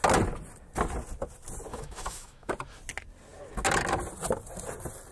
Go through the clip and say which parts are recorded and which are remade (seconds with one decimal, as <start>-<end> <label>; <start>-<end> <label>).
0.0-1.7 recorded; 1.7-2.5 remade; 2.5-5.1 recorded